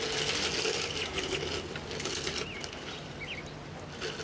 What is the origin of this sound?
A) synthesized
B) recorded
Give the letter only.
B